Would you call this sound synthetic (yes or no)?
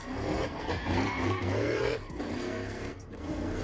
yes